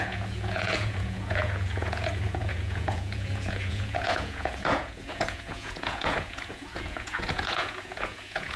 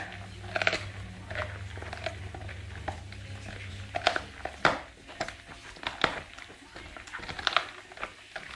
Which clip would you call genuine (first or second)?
second